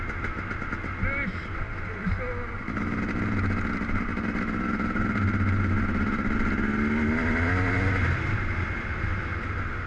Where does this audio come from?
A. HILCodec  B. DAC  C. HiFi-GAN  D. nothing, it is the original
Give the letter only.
D